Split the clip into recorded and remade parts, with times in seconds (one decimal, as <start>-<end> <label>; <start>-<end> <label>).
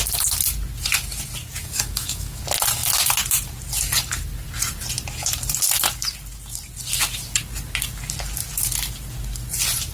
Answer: 0.0-1.6 recorded; 1.6-2.4 remade; 2.4-9.9 recorded